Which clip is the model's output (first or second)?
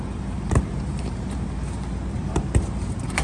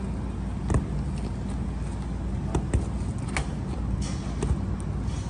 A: first